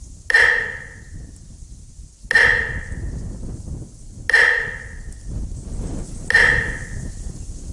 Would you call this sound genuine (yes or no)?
yes